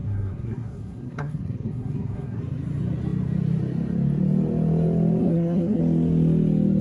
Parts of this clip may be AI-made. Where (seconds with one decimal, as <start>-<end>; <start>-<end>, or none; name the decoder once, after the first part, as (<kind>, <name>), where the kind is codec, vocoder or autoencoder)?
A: 0.0-2.4 (codec, SNAC); 5.2-5.8